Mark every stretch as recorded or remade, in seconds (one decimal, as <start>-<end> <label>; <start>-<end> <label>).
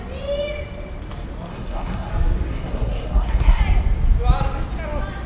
0.0-1.5 recorded; 1.5-2.1 remade; 2.1-2.5 recorded; 2.5-3.6 remade; 3.6-5.3 recorded